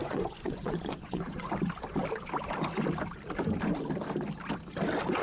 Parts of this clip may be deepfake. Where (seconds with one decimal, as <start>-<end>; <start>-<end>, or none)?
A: 0.0-1.5